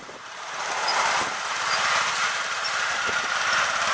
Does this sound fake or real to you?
fake